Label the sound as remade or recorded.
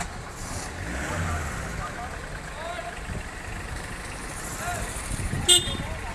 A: recorded